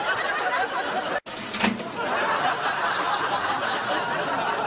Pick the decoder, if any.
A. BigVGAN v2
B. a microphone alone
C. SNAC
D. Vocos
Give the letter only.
B